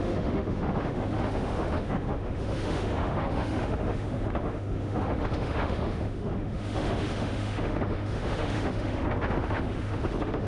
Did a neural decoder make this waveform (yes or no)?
yes